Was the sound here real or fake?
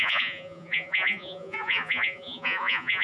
fake